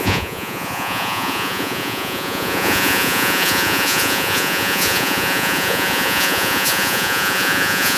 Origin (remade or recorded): remade